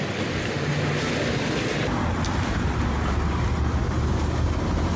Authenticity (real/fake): real